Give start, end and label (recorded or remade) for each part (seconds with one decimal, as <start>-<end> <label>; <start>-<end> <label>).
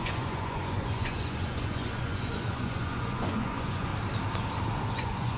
0.0-3.9 remade; 3.9-4.9 recorded; 4.9-5.4 remade